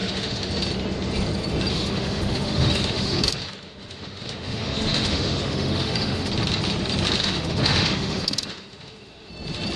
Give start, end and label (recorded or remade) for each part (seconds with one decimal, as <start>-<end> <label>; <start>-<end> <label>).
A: 0.0-0.5 remade; 0.5-1.7 recorded; 1.7-6.3 remade; 6.3-7.2 recorded; 7.2-9.3 remade; 9.3-9.8 recorded